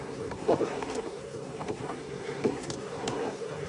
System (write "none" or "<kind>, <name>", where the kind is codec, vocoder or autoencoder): codec, SNAC